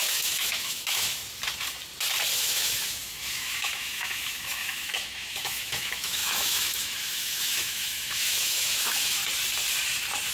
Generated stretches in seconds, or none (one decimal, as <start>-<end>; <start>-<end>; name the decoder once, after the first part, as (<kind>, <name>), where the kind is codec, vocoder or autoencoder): 0.0-1.2 (autoencoder, DAC-VAE); 2.4-9.2